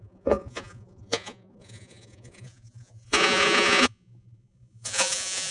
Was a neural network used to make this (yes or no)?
yes